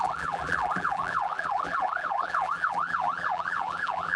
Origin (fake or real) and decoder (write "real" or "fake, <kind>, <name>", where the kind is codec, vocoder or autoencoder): fake, vocoder, BigVGAN v2